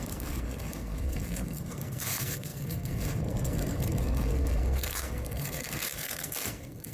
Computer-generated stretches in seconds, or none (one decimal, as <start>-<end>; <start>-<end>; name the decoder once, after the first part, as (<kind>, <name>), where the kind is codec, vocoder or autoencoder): 0.0-6.9 (codec, SNAC)